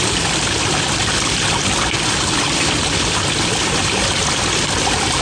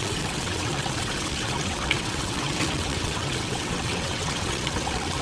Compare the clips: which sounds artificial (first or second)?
second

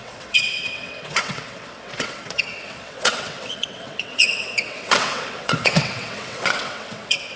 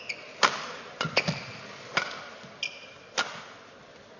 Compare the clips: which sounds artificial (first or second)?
first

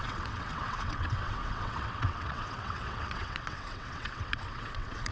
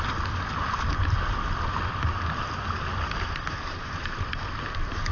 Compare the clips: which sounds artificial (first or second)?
first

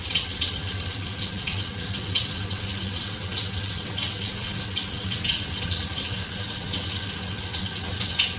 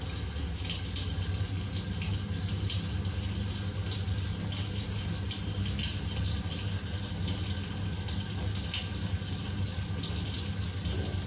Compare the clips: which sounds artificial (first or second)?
first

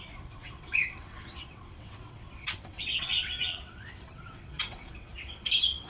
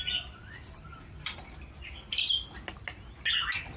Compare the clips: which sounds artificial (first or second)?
first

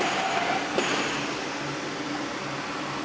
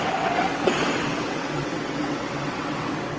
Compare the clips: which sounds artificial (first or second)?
second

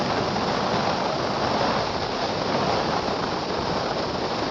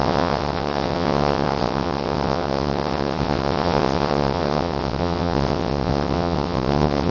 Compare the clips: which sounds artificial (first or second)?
second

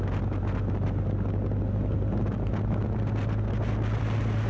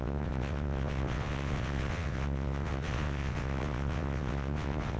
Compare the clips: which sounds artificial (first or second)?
second